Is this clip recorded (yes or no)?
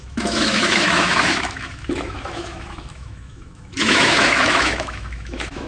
no